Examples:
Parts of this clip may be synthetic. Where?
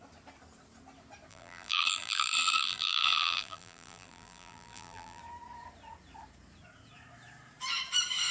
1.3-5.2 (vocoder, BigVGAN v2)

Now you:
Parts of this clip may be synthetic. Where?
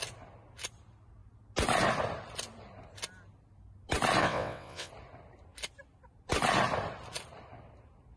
4.2-4.9 (vocoder, WaveNeXt)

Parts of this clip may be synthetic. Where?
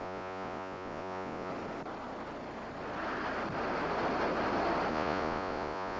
0.0-1.5 (vocoder, Vocos); 4.9-6.0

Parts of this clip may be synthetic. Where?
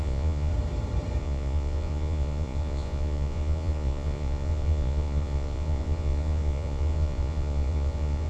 0.0-0.5 (vocoder, Vocos); 1.2-8.3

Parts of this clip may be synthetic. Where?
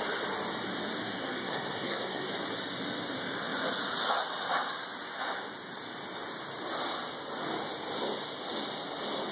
1.2-2.3 (codec, SNAC)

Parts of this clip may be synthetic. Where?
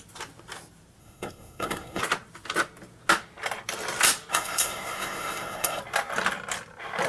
1.0-2.0 (codec, SNAC); 4.3-5.8